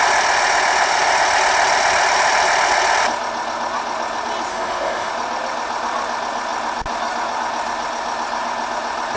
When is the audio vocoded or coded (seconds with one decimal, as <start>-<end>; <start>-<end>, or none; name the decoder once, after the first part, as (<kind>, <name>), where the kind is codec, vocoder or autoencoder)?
4.5-5.1 (autoencoder, DAC-VAE)